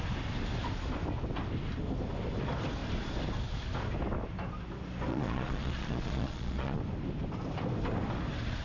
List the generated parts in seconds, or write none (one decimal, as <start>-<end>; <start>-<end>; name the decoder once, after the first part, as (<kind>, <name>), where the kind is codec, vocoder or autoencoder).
5.1-6.8 (vocoder, Vocos)